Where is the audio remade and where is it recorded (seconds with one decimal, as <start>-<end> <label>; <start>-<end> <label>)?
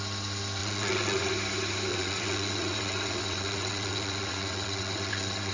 0.0-0.6 recorded; 0.6-1.3 remade; 1.3-1.9 recorded; 1.9-5.5 remade